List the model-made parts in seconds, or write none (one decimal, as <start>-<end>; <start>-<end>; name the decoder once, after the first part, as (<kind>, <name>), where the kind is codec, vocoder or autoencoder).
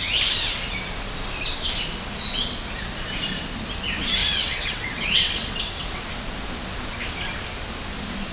4.2-6.0 (vocoder, WaveNeXt)